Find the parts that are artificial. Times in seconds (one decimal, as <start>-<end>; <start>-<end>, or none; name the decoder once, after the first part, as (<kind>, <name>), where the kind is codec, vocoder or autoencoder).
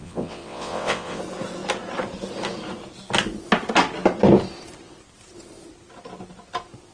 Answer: 0.0-1.2 (vocoder, WaveNeXt)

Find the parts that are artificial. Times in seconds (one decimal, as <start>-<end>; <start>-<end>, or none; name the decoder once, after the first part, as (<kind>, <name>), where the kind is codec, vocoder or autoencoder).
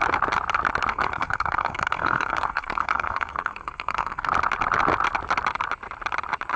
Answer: 0.9-4.3 (codec, SNAC)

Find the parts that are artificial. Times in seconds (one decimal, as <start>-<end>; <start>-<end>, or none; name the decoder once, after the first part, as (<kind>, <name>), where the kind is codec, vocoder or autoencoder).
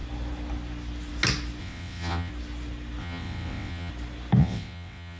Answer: 1.6-2.3 (vocoder, WaveNeXt); 3.0-3.9; 4.4-5.2